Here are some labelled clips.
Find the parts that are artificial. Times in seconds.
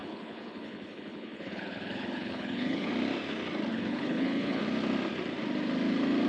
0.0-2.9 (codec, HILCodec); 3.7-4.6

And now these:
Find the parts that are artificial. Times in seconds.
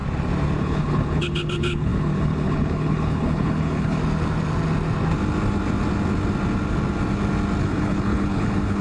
0.6-4.0 (codec, HILCodec); 7.6-8.8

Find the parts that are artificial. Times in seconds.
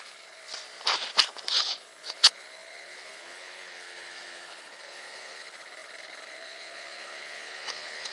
0.0-0.4 (codec, HILCodec); 1.5-8.1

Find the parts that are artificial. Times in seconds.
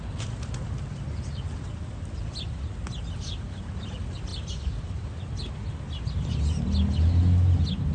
none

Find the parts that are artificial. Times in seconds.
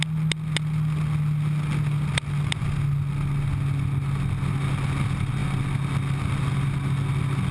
none